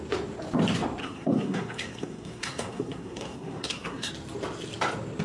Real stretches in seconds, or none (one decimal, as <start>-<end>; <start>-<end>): 0.0-1.0; 4.1-5.2